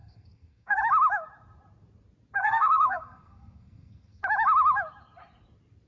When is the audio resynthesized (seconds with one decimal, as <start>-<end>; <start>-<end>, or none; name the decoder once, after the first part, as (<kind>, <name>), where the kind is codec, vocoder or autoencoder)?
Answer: 0.0-0.8 (codec, SNAC); 2.4-4.2